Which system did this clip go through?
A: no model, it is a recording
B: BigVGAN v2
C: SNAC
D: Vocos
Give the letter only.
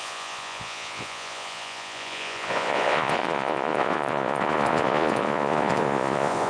D